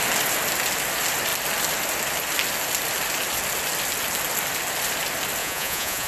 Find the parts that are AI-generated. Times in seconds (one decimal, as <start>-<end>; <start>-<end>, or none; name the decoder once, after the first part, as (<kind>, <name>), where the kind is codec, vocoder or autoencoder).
5.4-6.1 (vocoder, Vocos)